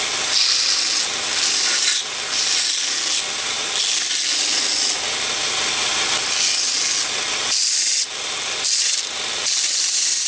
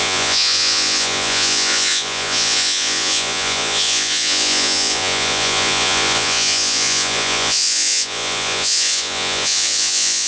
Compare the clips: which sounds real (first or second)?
first